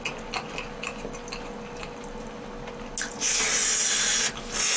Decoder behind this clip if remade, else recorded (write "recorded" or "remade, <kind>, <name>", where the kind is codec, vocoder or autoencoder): recorded